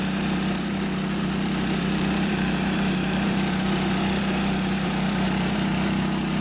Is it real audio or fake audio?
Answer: fake